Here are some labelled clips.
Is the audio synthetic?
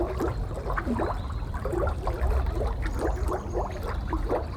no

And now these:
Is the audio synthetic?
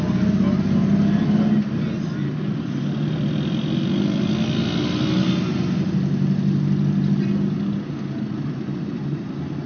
no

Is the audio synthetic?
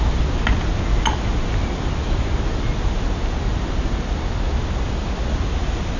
no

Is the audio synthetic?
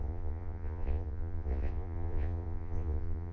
yes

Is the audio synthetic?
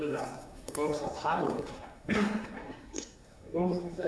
yes